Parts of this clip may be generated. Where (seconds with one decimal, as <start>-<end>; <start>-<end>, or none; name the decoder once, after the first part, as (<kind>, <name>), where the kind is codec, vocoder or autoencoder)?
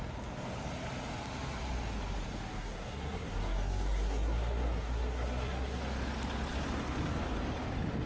2.6-5.8 (codec, SNAC)